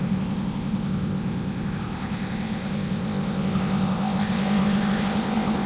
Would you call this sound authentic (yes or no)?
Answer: no